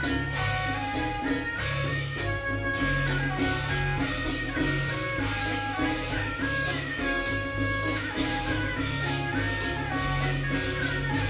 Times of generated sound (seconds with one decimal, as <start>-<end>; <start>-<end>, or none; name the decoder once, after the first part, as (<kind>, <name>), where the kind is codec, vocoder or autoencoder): 1.9-2.7 (autoencoder, DAC-VAE); 5.4-9.3